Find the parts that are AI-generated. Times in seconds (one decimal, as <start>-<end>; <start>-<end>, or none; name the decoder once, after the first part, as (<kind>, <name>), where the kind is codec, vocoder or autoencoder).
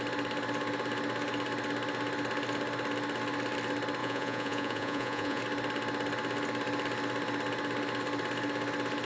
4.0-5.4 (vocoder, Vocos)